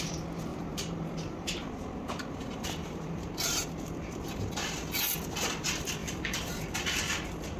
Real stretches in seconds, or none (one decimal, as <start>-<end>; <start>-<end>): 0.0-0.5; 4.7-6.0; 7.0-7.6